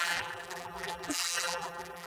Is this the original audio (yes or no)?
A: no